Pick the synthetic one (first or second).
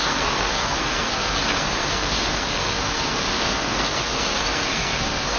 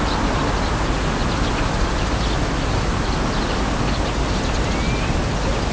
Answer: first